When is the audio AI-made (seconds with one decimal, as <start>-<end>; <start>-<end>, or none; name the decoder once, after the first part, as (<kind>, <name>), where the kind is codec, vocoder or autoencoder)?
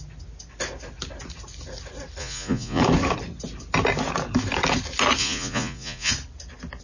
2.2-2.8 (vocoder, Vocos); 5.2-6.1